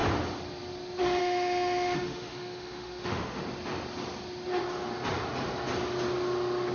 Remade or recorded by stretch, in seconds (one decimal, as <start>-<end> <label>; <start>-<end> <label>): 0.0-1.2 recorded; 1.2-3.4 remade; 3.4-6.7 recorded